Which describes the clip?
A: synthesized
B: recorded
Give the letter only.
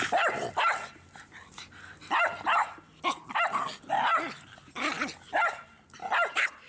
B